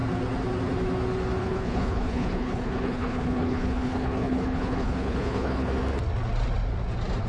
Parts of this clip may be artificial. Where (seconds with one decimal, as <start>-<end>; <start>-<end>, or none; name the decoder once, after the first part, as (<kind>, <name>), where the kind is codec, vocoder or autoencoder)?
1.4-5.7 (codec, HILCodec)